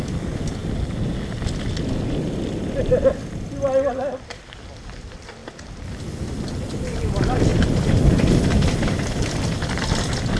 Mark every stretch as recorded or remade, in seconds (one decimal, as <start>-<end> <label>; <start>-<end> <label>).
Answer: 0.0-7.5 recorded; 7.5-8.9 remade; 8.9-10.4 recorded